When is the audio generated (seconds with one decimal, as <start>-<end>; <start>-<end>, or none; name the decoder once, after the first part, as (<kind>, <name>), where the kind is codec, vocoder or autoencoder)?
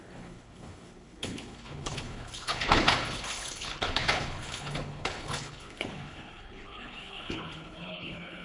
0.0-8.4 (codec, HILCodec)